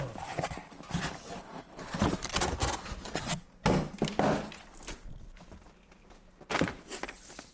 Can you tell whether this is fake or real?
real